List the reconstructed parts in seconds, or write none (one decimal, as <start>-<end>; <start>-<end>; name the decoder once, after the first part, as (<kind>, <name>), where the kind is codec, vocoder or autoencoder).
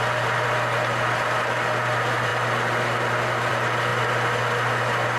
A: none